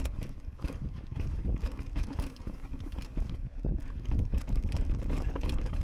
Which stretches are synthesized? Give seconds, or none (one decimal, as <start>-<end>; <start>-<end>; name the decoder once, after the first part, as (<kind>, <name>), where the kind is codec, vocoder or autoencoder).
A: 0.0-5.8 (codec, DAC)